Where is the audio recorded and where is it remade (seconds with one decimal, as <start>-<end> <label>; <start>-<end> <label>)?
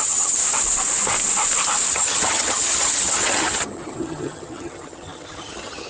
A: 0.0-0.4 remade; 0.4-1.9 recorded; 1.9-5.9 remade